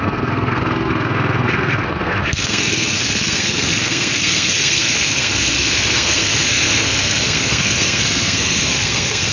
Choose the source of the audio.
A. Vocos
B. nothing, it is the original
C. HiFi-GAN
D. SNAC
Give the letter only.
D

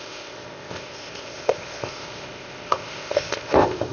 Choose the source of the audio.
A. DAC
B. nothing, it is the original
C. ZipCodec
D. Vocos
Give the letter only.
C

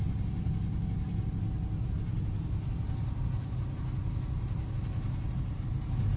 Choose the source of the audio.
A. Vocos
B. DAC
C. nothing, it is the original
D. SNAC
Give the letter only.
C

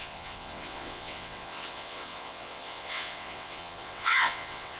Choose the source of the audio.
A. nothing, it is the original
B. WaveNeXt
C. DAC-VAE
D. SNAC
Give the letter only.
B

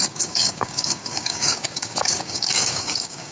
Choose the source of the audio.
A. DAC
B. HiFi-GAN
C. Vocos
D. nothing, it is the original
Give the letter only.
A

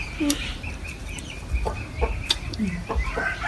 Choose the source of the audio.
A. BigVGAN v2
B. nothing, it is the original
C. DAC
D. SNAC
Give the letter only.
A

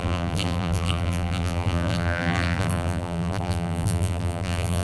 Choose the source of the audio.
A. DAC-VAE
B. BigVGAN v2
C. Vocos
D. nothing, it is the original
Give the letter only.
B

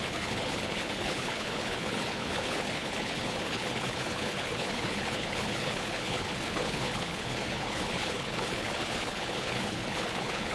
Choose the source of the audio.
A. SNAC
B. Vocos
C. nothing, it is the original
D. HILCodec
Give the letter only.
D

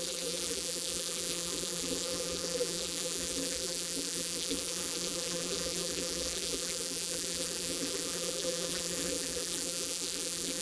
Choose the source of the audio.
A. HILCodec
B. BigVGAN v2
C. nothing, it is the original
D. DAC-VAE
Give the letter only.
B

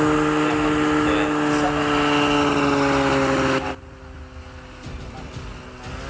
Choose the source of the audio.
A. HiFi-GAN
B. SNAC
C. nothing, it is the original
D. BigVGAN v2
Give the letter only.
C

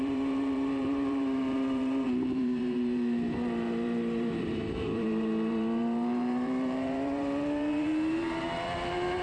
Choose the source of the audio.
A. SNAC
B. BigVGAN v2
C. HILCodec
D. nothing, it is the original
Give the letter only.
B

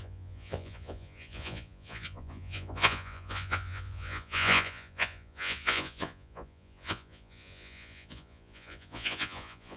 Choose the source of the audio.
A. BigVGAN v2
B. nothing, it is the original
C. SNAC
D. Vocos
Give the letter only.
D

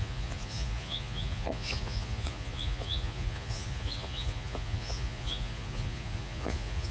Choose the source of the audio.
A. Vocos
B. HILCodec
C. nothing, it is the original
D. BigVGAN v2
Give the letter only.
A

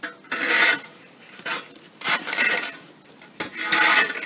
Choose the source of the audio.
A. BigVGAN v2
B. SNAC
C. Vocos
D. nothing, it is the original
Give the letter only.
D